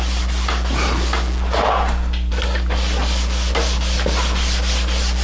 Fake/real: real